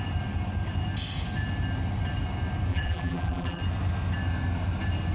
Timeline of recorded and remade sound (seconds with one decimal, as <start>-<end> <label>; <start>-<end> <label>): 0.0-2.7 recorded; 2.7-3.6 remade; 3.6-5.1 recorded